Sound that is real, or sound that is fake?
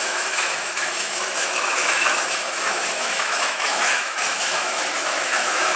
fake